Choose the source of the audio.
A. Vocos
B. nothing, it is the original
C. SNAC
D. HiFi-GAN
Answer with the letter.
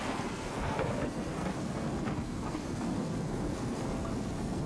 C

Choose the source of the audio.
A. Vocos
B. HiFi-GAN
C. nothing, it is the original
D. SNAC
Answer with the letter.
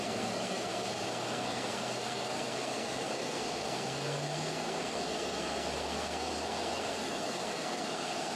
D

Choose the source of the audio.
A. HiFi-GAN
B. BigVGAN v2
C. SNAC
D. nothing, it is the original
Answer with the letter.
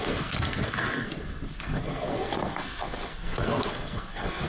C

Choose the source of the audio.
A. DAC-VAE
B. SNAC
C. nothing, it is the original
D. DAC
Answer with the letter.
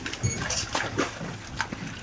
C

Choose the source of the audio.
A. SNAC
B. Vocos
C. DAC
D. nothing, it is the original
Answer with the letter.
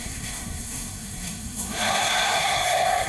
A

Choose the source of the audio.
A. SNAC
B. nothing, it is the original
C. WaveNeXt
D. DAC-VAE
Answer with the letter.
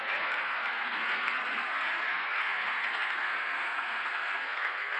A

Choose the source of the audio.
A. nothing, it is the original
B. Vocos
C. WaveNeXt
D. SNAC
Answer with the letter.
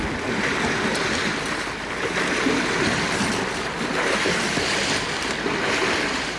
A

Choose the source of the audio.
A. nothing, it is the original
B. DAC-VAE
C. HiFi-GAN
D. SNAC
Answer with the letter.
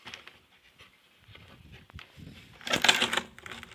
A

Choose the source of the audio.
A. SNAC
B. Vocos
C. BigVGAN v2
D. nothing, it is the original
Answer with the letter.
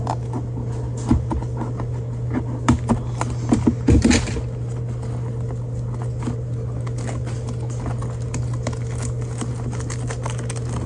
D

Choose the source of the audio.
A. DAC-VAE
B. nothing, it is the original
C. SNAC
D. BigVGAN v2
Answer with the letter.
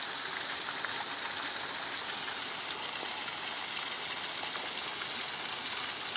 B